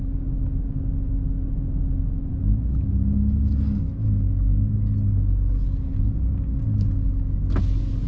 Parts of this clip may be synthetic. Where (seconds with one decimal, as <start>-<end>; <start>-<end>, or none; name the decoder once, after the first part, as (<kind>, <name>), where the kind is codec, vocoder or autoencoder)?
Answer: none